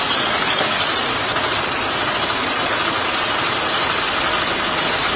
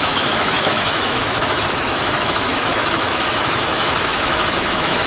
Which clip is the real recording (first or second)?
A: first